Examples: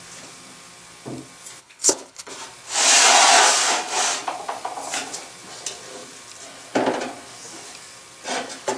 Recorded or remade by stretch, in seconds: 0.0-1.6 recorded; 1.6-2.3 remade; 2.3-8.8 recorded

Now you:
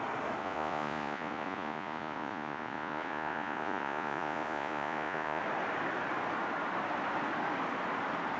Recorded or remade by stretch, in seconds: 0.0-0.4 recorded; 0.4-5.4 remade; 5.4-8.4 recorded

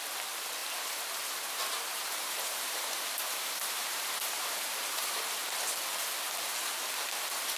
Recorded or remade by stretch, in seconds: 0.0-0.6 recorded; 0.6-5.2 remade; 5.2-7.6 recorded